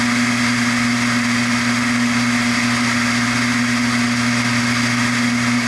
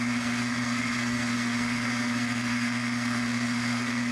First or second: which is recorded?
first